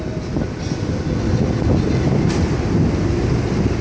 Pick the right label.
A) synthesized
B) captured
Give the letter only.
B